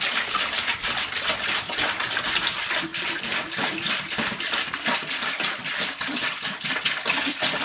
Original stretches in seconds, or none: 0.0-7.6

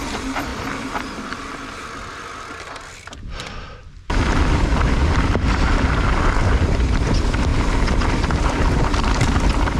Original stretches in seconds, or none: 0.5-2.1; 7.5-8.5